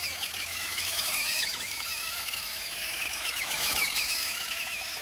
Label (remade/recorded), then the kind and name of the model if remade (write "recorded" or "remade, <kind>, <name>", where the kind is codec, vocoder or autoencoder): remade, autoencoder, DAC-VAE